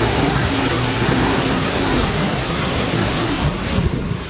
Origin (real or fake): fake